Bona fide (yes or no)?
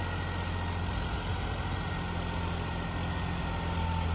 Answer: yes